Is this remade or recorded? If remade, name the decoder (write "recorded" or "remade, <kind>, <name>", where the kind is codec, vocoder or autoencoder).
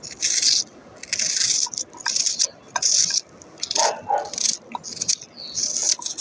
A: recorded